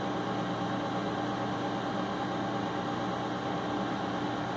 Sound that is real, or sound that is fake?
real